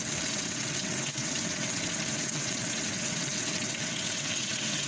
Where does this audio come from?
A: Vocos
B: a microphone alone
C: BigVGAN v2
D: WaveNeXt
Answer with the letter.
D